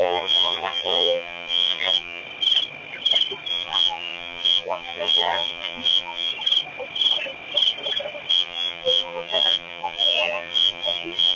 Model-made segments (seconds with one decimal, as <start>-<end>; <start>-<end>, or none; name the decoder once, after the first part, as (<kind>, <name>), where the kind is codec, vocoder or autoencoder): 0.0-2.2 (vocoder, BigVGAN v2); 3.5-6.3; 8.3-11.4